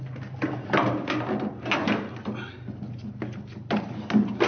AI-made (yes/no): no